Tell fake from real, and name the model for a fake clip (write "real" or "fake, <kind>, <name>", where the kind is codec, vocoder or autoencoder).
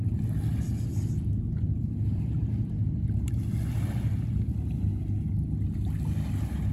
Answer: real